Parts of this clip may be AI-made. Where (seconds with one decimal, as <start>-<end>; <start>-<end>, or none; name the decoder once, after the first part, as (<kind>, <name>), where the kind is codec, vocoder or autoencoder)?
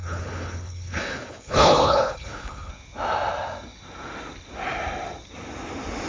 0.0-2.7 (codec, HILCodec)